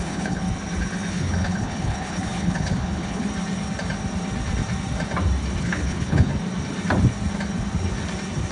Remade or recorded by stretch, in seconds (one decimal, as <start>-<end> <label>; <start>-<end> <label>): 0.0-0.4 remade; 0.4-1.1 recorded; 1.1-3.3 remade; 3.3-5.6 recorded; 5.6-6.3 remade; 6.3-8.5 recorded